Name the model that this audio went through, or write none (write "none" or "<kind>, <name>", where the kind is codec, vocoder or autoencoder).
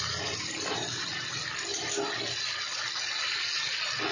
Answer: none